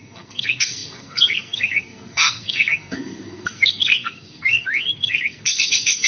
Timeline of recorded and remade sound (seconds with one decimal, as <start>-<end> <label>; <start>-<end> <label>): 0.0-6.1 remade

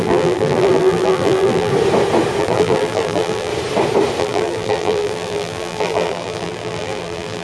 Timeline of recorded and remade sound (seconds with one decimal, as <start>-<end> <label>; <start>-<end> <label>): 0.0-1.7 remade; 1.7-2.4 recorded; 2.4-3.5 remade; 3.5-4.2 recorded; 4.2-7.4 remade

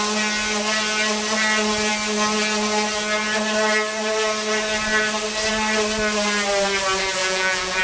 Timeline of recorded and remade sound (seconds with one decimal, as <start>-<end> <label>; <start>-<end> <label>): 0.0-7.2 recorded; 7.2-7.8 remade

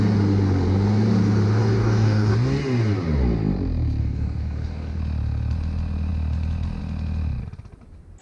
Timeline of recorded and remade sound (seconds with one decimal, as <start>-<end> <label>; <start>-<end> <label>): 0.0-1.6 recorded; 1.6-2.3 remade; 2.3-4.0 recorded; 4.0-5.0 remade; 5.0-8.2 recorded

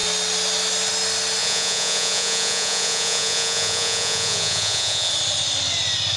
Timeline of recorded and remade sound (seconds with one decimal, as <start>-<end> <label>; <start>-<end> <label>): 0.0-1.4 recorded; 1.4-5.1 remade; 5.1-6.2 recorded